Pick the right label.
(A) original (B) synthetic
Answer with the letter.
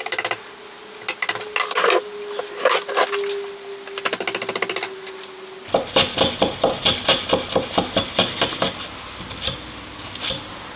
A